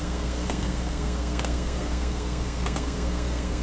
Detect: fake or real fake